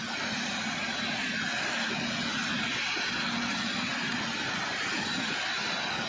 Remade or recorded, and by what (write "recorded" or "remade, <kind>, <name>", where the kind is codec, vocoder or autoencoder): recorded